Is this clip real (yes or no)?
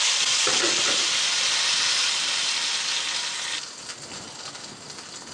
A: yes